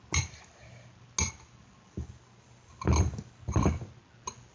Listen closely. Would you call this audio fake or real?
real